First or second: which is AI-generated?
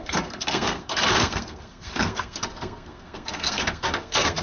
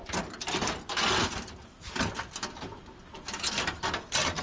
first